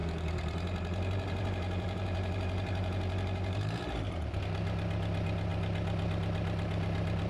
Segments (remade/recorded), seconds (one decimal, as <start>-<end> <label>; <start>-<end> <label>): 0.0-4.4 remade; 4.4-7.3 recorded